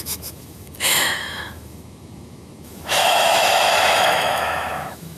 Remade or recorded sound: remade